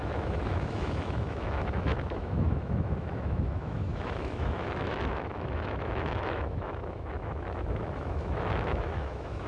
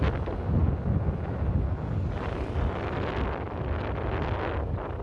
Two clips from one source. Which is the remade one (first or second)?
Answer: first